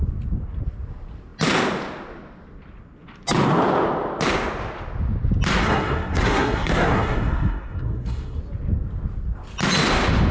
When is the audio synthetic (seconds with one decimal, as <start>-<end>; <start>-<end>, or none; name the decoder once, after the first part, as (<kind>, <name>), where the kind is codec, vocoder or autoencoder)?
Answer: 5.6-8.4 (codec, SNAC)